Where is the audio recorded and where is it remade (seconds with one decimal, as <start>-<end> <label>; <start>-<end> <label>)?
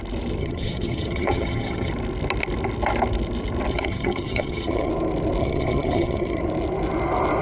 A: 0.0-0.4 recorded; 0.4-1.9 remade; 1.9-3.7 recorded; 3.7-4.9 remade; 4.9-5.4 recorded; 5.4-6.4 remade; 6.4-7.4 recorded